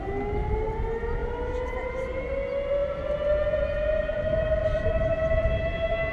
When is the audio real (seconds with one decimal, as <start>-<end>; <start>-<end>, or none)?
0.0-2.8